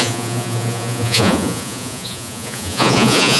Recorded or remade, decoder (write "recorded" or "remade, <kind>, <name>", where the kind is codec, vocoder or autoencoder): remade, vocoder, Vocos